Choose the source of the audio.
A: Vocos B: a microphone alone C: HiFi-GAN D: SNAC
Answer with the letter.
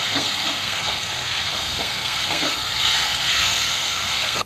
D